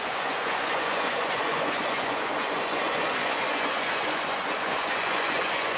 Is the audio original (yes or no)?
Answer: no